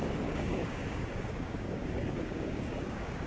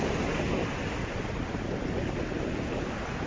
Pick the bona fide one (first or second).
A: second